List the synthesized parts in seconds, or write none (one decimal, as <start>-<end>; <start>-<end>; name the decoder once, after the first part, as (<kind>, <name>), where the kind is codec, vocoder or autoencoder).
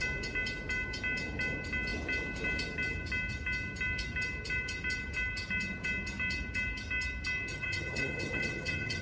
7.5-9.0 (vocoder, HiFi-GAN)